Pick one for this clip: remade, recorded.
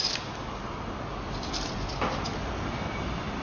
recorded